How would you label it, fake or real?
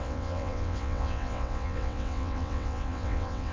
fake